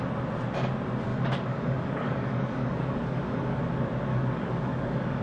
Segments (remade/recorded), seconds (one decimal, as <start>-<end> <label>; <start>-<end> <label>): 0.0-1.1 recorded; 1.1-3.6 remade; 3.6-4.1 recorded; 4.1-5.2 remade